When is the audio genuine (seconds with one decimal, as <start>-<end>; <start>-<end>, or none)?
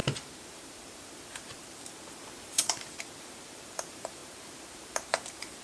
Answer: none